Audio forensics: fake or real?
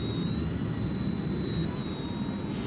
real